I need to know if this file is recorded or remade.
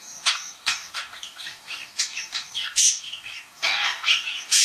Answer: remade